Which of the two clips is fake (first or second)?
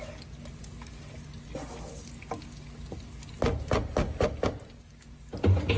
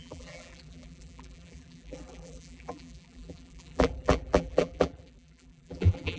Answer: second